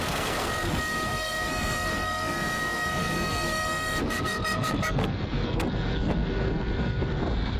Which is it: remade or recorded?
remade